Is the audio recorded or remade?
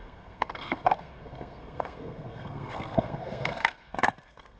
remade